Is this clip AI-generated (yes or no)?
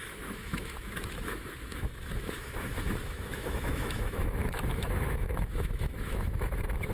yes